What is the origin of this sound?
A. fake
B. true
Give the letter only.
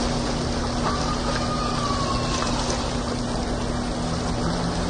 B